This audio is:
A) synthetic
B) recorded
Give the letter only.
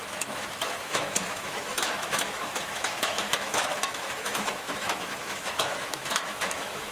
A